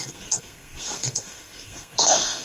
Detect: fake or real fake